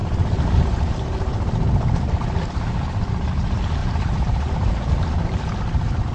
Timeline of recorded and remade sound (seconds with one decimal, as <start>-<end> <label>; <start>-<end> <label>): 0.0-3.8 recorded; 3.8-4.9 remade; 4.9-6.1 recorded